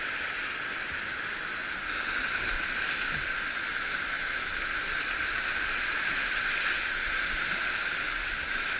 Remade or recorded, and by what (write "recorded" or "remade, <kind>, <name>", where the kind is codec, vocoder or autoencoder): recorded